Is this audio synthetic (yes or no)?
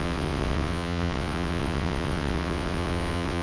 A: yes